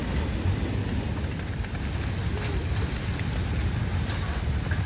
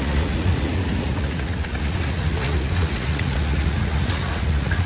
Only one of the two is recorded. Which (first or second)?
first